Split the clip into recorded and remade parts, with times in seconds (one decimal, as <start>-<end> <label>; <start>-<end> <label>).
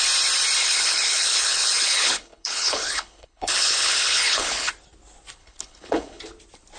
0.0-0.6 recorded; 0.6-4.7 remade; 4.7-5.4 recorded; 5.4-6.2 remade; 6.2-6.8 recorded